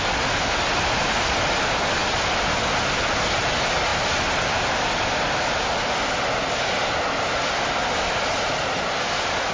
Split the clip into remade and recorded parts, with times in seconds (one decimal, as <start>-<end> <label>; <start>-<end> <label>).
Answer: 0.0-9.5 recorded